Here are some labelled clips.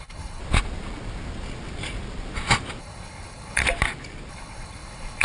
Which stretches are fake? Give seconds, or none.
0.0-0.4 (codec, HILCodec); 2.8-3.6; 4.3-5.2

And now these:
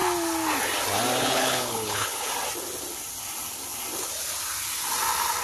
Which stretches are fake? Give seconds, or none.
1.2-2.3 (codec, HILCodec)

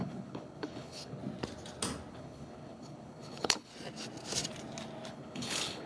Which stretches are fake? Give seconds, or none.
0.0-1.2 (codec, HILCodec); 2.1-3.7; 5.1-5.9

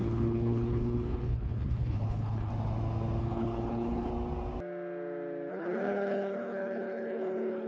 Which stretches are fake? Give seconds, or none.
0.0-2.5 (codec, HILCodec); 3.2-4.1; 5.5-7.7